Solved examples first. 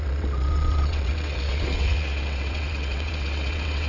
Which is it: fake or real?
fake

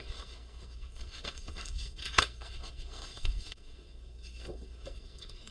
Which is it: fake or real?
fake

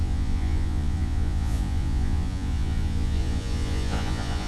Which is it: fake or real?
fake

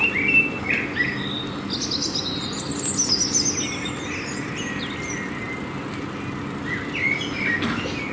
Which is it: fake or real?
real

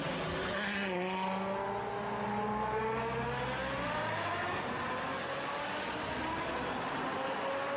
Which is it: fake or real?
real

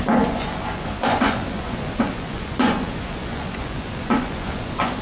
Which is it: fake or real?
fake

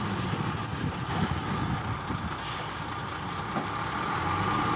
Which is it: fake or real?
real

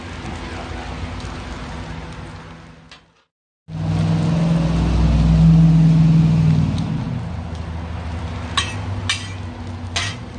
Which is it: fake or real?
real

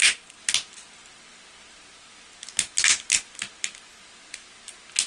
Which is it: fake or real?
real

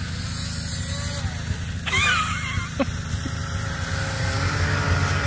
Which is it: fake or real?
real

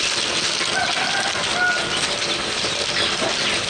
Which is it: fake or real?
real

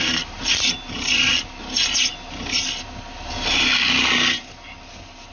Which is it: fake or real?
real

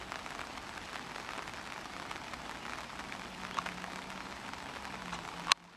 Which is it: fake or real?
real